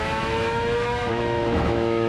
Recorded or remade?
remade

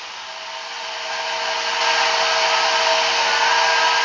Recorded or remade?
recorded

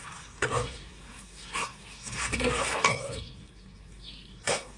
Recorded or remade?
remade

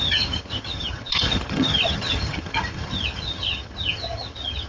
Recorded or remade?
remade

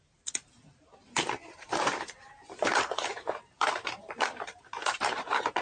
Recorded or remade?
remade